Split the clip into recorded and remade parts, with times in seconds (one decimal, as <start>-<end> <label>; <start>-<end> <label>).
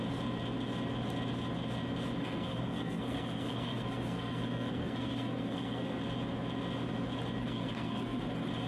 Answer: 0.0-2.2 recorded; 2.2-6.0 remade; 6.0-7.4 recorded; 7.4-8.2 remade; 8.2-8.7 recorded